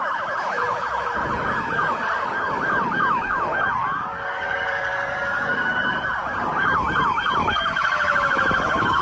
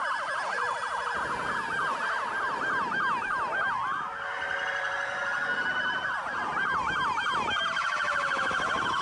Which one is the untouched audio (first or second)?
second